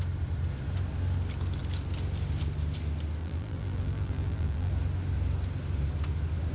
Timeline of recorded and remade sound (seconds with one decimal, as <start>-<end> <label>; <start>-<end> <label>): 0.0-3.2 recorded; 3.2-4.7 remade; 4.7-6.5 recorded